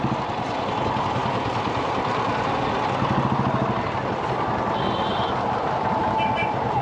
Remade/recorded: recorded